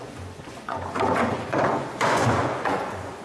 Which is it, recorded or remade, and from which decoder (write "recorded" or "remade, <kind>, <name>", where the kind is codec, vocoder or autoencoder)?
remade, vocoder, Vocos